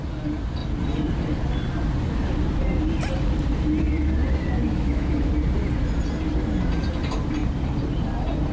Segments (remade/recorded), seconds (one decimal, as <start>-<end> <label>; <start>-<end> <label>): 0.0-4.6 recorded; 4.6-5.3 remade; 5.3-8.5 recorded